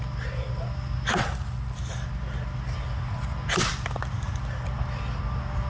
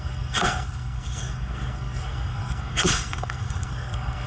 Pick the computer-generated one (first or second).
second